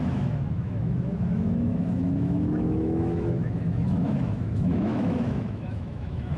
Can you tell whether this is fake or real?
fake